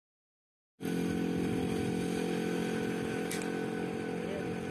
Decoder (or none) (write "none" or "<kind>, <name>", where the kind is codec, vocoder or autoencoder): none